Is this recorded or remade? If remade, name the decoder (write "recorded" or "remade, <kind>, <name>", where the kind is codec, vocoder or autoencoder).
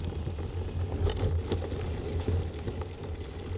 recorded